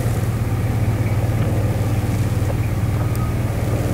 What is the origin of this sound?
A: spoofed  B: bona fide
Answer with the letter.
B